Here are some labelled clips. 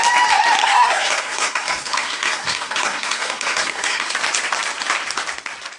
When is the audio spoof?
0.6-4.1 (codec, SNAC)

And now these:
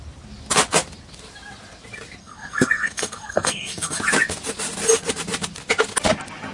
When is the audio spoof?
2.2-4.0 (codec, SNAC)

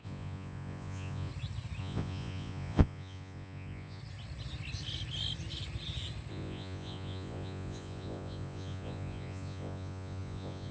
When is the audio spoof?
0.0-1.3 (vocoder, Vocos); 1.8-4.0; 6.3-10.7

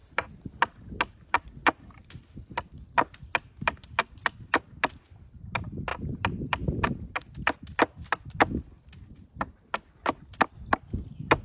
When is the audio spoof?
none